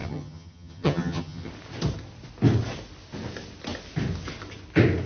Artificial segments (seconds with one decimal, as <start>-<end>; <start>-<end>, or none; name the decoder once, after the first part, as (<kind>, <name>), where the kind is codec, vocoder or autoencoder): 0.0-1.5 (vocoder, HiFi-GAN)